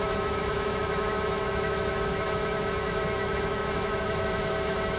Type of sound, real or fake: fake